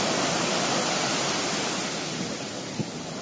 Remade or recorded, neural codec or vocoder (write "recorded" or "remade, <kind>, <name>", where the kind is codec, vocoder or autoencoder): recorded